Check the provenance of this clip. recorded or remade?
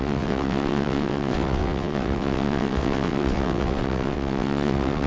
remade